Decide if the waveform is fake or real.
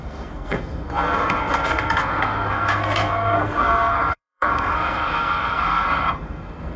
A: fake